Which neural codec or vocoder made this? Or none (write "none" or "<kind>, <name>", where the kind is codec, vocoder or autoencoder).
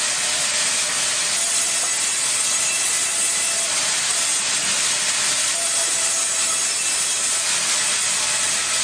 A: none